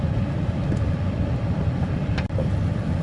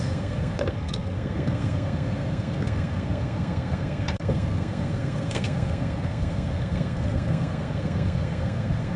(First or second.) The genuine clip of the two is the first